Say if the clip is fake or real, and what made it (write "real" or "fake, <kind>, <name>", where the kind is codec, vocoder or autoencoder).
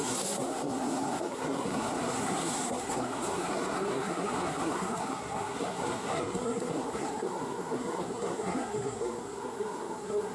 fake, codec, SNAC